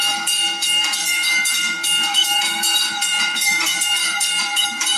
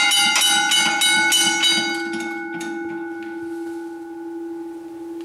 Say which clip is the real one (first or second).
second